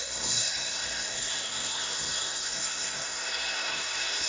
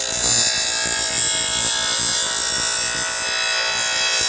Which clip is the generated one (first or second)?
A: first